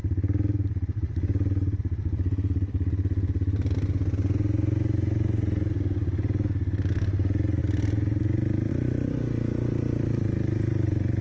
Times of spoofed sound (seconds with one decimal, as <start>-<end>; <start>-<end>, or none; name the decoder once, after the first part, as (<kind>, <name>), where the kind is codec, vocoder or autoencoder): none